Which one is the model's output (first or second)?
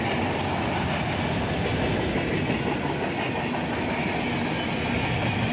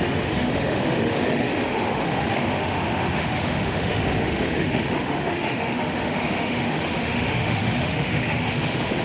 second